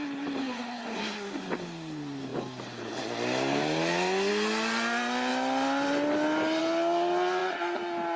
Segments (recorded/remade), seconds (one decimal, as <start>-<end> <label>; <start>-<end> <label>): 0.0-0.4 recorded; 0.4-1.4 remade; 1.4-8.2 recorded